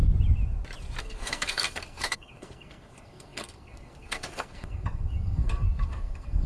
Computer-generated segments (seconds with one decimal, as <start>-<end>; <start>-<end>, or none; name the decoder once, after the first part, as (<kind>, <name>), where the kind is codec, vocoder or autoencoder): 1.0-6.5 (codec, SNAC)